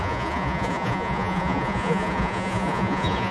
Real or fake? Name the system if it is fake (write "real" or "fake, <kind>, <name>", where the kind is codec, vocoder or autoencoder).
fake, vocoder, Vocos